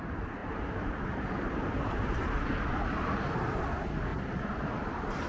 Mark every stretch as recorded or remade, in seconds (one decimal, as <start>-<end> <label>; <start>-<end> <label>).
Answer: 0.0-0.4 recorded; 0.4-3.6 remade; 3.6-4.1 recorded; 4.1-4.7 remade; 4.7-5.3 recorded